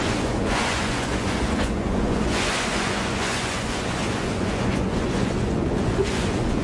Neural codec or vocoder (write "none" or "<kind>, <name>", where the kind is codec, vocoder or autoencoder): vocoder, Vocos